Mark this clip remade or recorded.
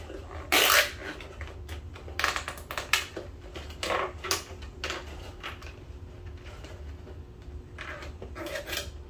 recorded